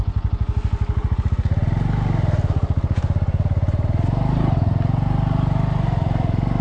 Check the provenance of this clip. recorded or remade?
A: recorded